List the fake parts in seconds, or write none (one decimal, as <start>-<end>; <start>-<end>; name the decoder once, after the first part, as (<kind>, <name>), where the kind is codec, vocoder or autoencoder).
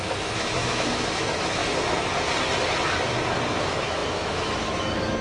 0.0-1.6 (autoencoder, DAC-VAE); 3.6-5.2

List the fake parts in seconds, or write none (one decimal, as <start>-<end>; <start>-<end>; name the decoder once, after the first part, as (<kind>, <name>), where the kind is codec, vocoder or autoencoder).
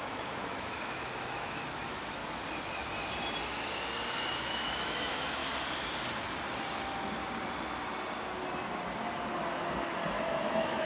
0.0-2.2 (autoencoder, DAC-VAE); 4.3-5.4; 10.2-10.9